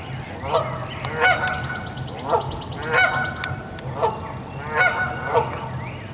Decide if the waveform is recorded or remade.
recorded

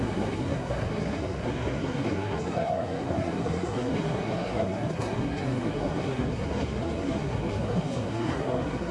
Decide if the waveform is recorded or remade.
remade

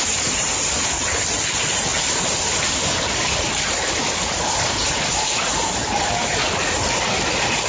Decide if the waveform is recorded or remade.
recorded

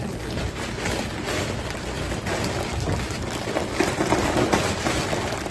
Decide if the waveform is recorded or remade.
remade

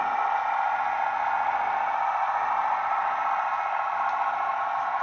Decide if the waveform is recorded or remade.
recorded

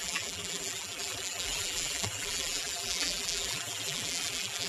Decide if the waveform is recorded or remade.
remade